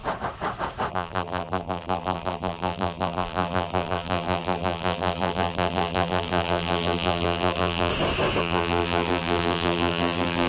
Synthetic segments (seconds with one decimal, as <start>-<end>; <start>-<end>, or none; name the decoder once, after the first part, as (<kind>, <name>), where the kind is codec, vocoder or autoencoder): 0.9-7.9 (vocoder, BigVGAN v2); 8.4-10.5